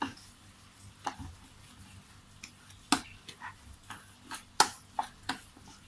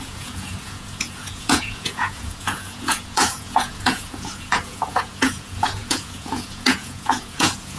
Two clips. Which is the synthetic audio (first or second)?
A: second